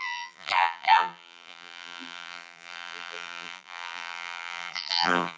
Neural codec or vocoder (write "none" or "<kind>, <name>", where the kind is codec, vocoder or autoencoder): vocoder, BigVGAN v2